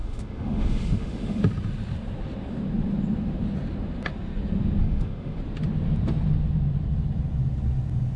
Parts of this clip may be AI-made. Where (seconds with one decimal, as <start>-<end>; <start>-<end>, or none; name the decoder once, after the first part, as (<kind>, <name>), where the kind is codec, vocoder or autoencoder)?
0.0-1.4 (autoencoder, DAC-VAE); 4.8-5.4